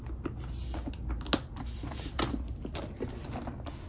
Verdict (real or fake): real